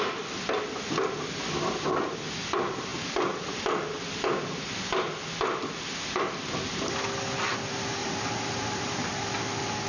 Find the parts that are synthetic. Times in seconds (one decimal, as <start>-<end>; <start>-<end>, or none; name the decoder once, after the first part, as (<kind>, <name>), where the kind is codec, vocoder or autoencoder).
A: 8.0-9.1 (vocoder, BigVGAN v2)